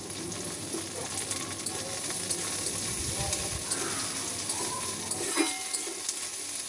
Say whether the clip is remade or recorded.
recorded